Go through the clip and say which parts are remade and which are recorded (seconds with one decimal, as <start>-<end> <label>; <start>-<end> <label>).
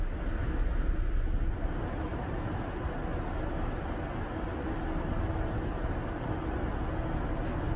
0.0-7.8 recorded